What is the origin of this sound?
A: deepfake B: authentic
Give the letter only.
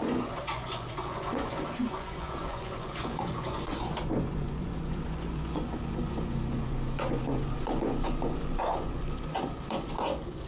A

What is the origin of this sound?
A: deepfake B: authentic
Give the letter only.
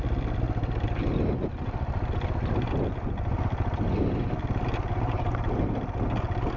B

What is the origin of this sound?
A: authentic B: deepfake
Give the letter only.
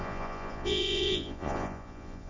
B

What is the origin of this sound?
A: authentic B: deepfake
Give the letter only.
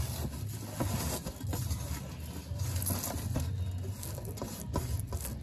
A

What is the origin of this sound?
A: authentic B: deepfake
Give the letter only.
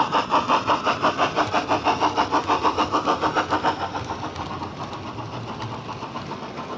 A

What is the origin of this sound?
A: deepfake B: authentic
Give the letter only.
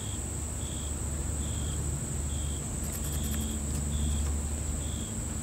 B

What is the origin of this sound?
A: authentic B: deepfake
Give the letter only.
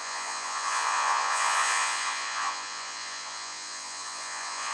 B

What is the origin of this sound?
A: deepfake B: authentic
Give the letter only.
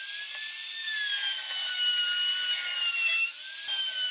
B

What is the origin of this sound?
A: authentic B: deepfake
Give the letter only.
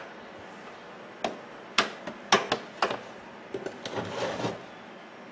A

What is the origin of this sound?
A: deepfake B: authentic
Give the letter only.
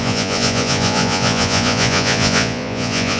A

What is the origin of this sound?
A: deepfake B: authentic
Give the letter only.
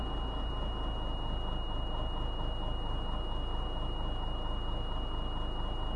B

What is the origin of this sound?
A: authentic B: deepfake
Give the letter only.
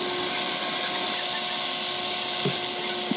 A